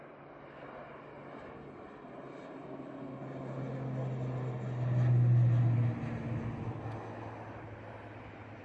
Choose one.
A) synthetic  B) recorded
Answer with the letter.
B